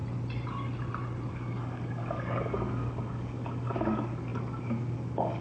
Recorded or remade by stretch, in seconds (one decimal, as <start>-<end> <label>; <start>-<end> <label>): 0.0-1.3 recorded; 1.3-5.4 remade